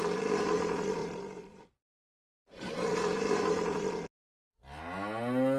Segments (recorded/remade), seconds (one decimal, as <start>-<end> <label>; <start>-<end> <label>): 0.0-1.0 recorded; 1.0-3.4 remade; 3.4-5.6 recorded